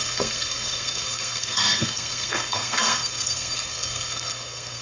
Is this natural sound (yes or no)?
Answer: no